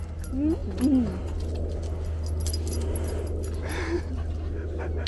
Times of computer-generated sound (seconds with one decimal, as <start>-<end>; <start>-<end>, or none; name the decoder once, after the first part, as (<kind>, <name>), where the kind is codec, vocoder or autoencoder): none